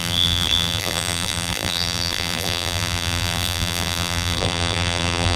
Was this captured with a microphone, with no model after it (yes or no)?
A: no